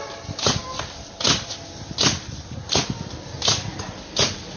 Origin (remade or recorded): remade